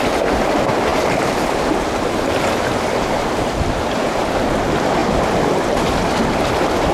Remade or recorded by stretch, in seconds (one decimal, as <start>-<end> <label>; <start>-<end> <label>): 0.0-6.9 recorded